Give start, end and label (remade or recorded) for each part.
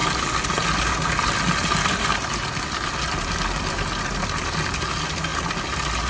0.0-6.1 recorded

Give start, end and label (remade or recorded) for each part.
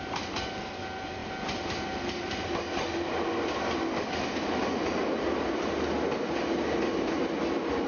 0.0-7.9 recorded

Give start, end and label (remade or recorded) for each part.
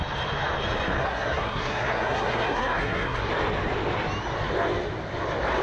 0.0-1.0 recorded; 1.0-3.3 remade; 3.3-5.6 recorded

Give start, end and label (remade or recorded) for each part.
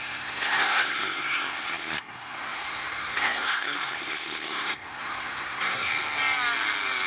0.0-5.9 remade; 5.9-7.1 recorded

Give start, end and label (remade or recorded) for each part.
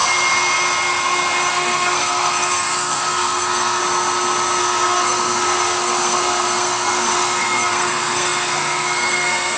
0.0-1.5 recorded; 1.5-3.8 remade; 3.8-4.6 recorded; 4.6-9.6 remade